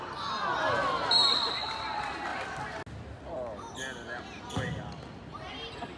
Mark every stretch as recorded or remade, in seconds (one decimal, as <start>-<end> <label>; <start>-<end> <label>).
0.0-2.3 remade; 2.3-5.5 recorded; 5.5-6.0 remade